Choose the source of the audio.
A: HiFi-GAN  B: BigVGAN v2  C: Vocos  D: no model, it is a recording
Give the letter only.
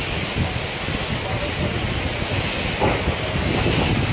D